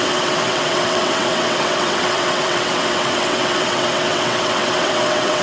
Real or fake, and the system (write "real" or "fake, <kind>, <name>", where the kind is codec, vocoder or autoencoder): fake, vocoder, WaveNeXt